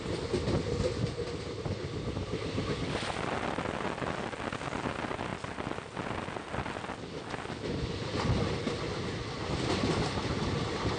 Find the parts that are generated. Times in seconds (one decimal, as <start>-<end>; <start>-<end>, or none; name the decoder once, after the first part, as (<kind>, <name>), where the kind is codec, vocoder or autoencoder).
none